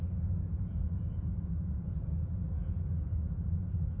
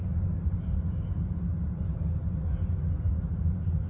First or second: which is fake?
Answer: first